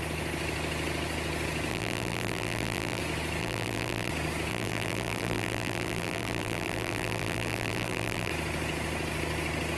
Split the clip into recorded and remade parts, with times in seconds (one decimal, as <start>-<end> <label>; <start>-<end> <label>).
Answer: 0.0-1.7 recorded; 1.7-3.0 remade; 3.0-3.4 recorded; 3.4-4.1 remade; 4.1-4.5 recorded; 4.5-8.3 remade; 8.3-9.8 recorded